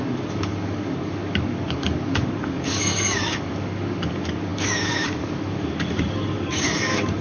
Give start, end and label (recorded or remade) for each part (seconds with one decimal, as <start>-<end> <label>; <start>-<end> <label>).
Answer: 0.0-7.2 remade